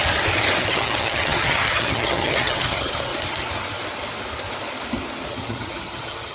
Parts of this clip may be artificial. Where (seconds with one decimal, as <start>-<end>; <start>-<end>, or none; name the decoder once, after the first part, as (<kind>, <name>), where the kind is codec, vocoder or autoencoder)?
0.6-3.1 (vocoder, HiFi-GAN); 5.3-6.3